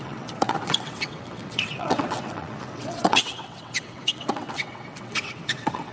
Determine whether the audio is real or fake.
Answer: fake